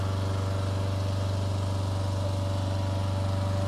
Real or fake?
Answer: real